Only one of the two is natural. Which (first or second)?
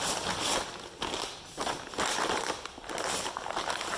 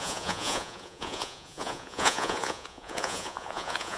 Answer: first